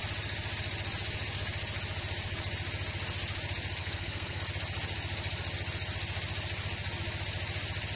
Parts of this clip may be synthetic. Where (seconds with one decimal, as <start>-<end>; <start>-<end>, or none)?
3.8-4.4